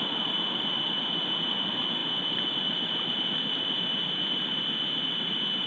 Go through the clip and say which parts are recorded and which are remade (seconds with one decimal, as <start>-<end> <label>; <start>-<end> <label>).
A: 0.0-5.7 recorded